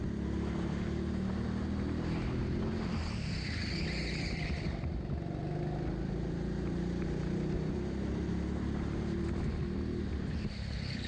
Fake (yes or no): no